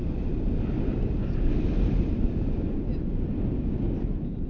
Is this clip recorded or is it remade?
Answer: recorded